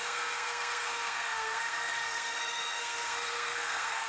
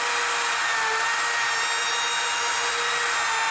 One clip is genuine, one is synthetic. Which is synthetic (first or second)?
first